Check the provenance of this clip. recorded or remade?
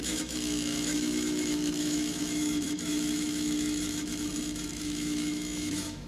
remade